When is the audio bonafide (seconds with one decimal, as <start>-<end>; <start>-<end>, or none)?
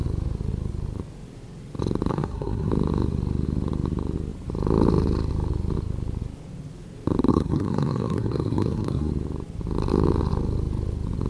0.0-2.1; 2.7-7.3; 9.1-11.3